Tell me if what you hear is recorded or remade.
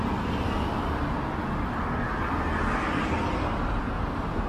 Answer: recorded